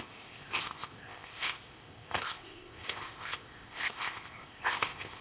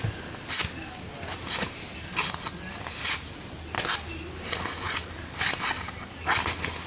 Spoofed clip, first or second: first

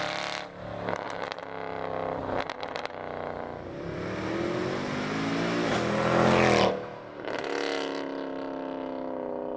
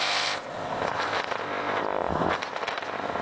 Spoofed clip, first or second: second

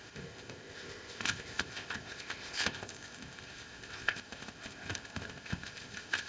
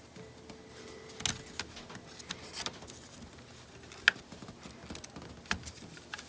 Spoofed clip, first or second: first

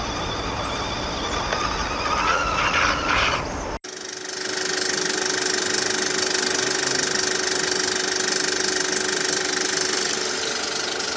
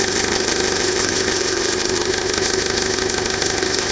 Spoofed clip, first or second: second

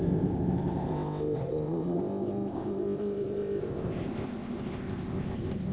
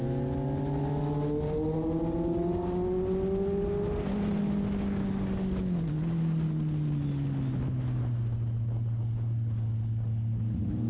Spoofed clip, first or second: first